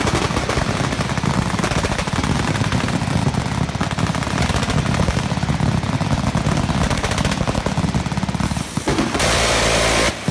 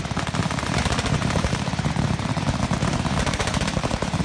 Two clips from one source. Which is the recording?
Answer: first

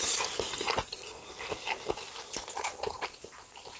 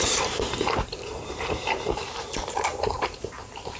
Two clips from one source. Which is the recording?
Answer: first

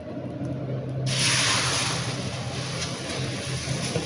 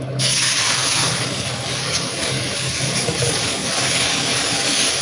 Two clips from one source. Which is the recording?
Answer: first